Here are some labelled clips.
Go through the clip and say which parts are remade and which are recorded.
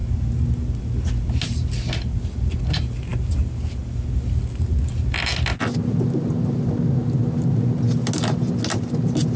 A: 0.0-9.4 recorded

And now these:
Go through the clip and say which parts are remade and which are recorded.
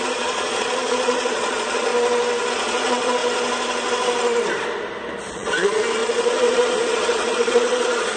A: 0.0-1.9 remade; 1.9-2.5 recorded; 2.5-3.2 remade; 3.2-5.3 recorded; 5.3-8.2 remade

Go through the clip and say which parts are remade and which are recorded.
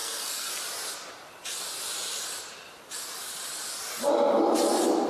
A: 0.0-0.5 remade; 0.5-5.1 recorded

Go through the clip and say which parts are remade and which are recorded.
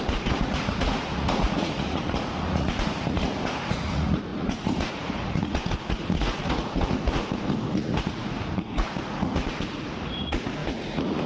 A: 0.0-11.3 remade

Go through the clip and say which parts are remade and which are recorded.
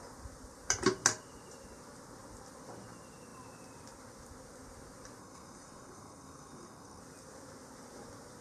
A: 0.0-5.2 recorded; 5.2-7.0 remade; 7.0-8.4 recorded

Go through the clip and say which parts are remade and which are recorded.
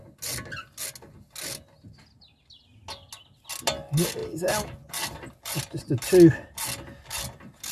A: 0.0-7.7 recorded